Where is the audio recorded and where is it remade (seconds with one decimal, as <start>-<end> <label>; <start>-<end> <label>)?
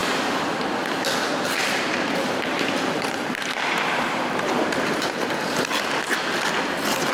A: 0.0-0.6 remade; 0.6-1.3 recorded; 1.3-5.6 remade; 5.6-7.1 recorded